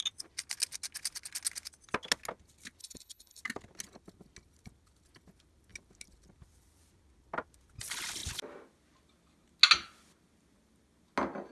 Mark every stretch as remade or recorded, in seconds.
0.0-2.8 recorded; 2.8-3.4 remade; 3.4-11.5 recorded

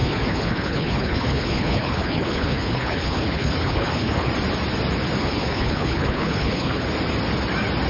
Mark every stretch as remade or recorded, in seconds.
0.0-4.3 remade; 4.3-5.2 recorded; 5.2-6.8 remade; 6.8-7.9 recorded

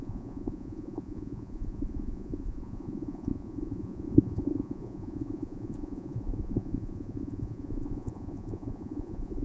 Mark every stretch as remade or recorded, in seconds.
0.0-9.4 remade

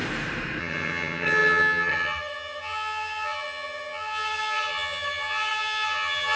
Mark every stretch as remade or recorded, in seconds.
0.0-0.6 recorded; 0.6-6.4 remade

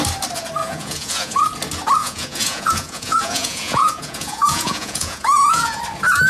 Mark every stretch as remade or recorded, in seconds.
0.0-0.6 recorded; 0.6-1.4 remade; 1.4-2.0 recorded; 2.0-5.8 remade; 5.8-6.3 recorded

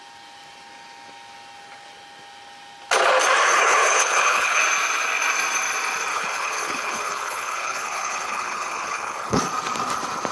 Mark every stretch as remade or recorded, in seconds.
0.0-3.5 recorded; 3.5-4.6 remade; 4.6-6.1 recorded; 6.1-9.4 remade; 9.4-10.3 recorded